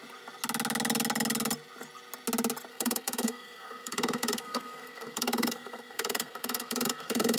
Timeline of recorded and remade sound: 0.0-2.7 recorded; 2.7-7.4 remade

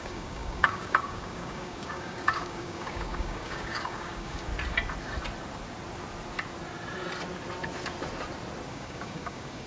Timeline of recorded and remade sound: 0.0-4.5 remade; 4.5-8.7 recorded; 8.7-9.7 remade